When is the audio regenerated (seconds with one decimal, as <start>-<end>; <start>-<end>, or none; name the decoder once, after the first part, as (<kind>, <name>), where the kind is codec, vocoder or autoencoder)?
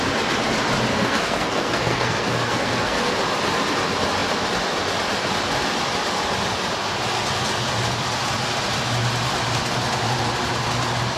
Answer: 0.9-3.1 (codec, SNAC)